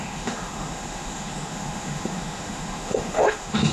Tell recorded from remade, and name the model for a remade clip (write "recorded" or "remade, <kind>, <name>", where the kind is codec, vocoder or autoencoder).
remade, autoencoder, DAC-VAE